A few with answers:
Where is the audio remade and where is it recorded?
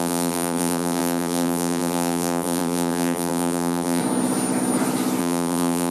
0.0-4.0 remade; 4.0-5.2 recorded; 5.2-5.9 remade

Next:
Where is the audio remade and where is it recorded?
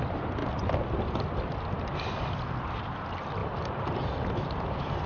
0.0-3.4 recorded; 3.4-3.9 remade; 3.9-5.1 recorded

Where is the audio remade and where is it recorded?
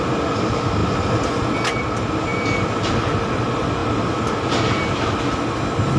0.0-2.3 recorded; 2.3-3.3 remade; 3.3-3.8 recorded; 3.8-4.6 remade; 4.6-6.0 recorded